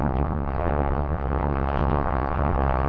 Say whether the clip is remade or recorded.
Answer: remade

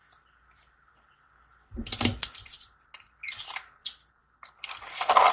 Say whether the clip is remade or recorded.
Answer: recorded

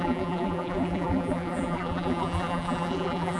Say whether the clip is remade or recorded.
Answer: remade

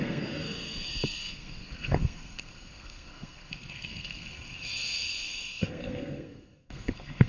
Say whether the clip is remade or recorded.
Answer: remade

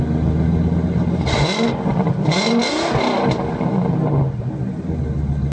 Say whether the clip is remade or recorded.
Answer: recorded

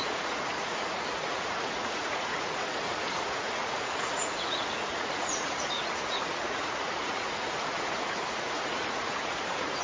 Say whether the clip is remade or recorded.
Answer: remade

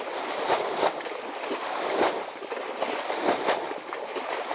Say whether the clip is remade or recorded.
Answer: recorded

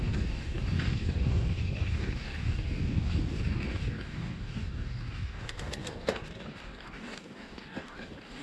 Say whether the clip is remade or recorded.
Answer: remade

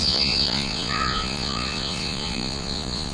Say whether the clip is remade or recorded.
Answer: remade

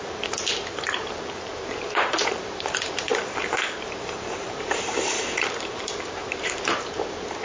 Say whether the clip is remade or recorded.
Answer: remade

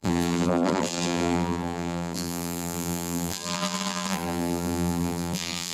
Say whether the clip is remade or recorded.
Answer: remade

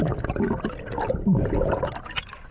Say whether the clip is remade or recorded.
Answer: recorded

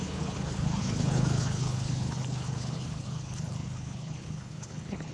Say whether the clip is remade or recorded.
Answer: remade